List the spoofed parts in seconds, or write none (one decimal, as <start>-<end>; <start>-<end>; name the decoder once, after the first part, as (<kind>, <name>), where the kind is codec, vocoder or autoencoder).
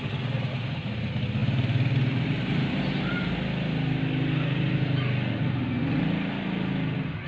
none